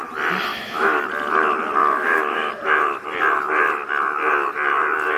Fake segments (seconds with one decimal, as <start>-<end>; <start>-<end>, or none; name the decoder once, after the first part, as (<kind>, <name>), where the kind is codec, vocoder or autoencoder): 0.5-1.0 (autoencoder, DAC-VAE); 1.8-2.5